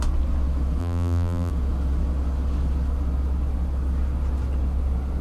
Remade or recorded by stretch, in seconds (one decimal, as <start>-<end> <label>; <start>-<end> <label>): 0.0-0.8 recorded; 0.8-1.5 remade; 1.5-5.2 recorded